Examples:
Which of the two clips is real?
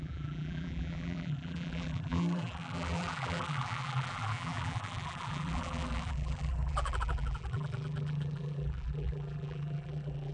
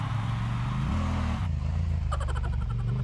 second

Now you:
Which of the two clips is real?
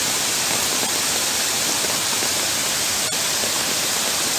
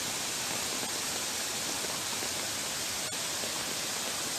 second